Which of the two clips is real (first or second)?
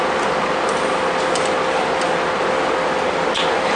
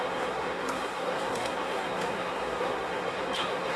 first